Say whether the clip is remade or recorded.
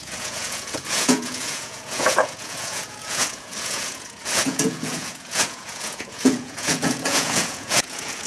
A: remade